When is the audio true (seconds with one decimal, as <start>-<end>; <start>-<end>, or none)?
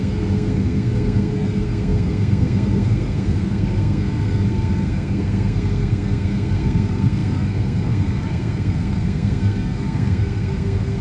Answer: none